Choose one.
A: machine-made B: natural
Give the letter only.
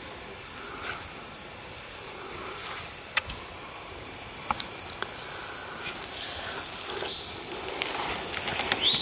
B